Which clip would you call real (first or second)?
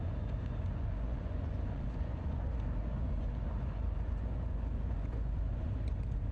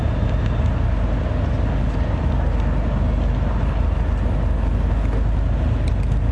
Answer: second